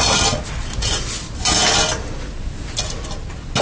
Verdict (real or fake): real